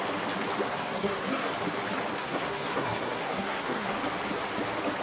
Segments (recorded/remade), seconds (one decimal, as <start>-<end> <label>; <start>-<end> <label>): 0.0-0.7 recorded; 0.7-1.5 remade; 1.5-2.2 recorded; 2.2-3.9 remade; 3.9-5.0 recorded